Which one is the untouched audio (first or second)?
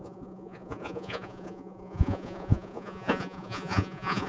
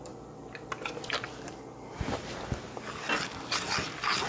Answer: second